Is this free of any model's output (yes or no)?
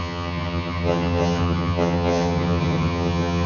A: no